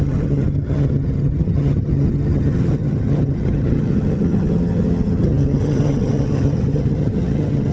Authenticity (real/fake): fake